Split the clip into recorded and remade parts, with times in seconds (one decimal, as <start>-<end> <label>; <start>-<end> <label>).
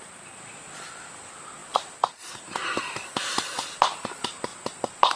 0.0-1.6 recorded; 1.6-3.4 remade; 3.4-5.2 recorded